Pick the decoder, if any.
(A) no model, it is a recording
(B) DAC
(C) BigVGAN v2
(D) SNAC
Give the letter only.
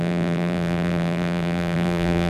C